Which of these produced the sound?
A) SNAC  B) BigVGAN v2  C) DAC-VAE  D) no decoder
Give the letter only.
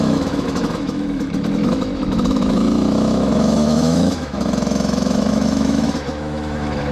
C